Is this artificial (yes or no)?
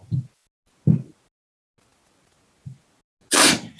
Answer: no